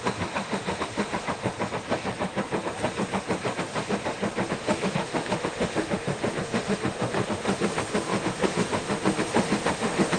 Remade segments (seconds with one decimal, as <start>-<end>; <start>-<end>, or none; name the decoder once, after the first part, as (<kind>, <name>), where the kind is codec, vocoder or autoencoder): 0.0-1.5 (autoencoder, DAC-VAE); 4.5-10.2